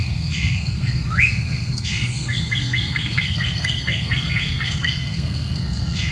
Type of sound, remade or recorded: remade